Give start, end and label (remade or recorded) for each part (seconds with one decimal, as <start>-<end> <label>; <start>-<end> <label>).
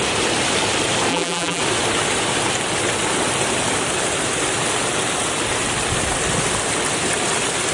0.0-1.1 recorded; 1.1-1.6 remade; 1.6-7.7 recorded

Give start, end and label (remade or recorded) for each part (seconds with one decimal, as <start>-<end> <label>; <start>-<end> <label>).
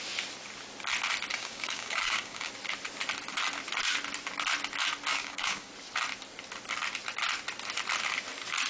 0.0-1.3 recorded; 1.3-2.5 remade; 2.5-5.1 recorded; 5.1-5.7 remade; 5.7-8.7 recorded